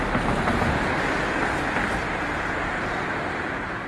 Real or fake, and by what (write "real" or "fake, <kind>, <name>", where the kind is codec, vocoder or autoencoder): real